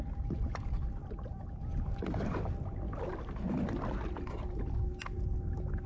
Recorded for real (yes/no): yes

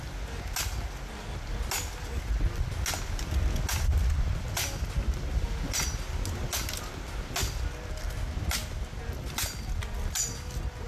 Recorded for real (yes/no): yes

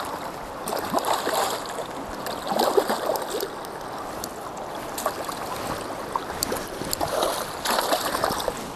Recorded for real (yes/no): yes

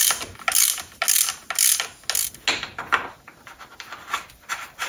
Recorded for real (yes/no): yes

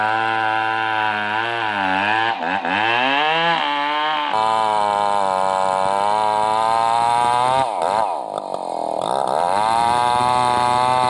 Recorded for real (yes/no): yes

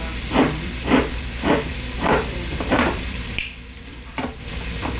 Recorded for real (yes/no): no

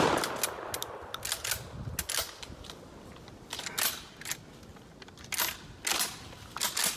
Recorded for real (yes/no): yes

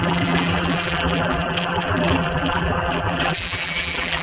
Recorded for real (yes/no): no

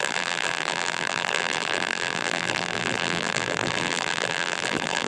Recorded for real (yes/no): no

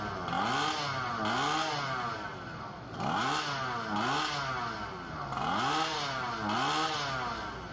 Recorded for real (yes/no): yes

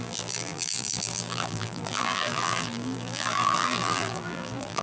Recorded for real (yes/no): no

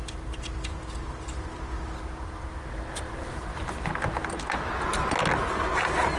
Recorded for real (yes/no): yes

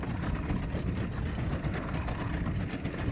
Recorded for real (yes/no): yes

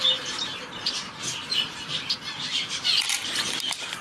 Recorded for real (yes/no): no